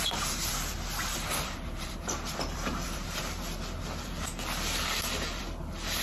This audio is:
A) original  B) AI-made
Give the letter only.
B